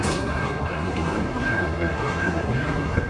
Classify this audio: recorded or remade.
remade